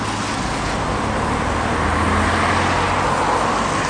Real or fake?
real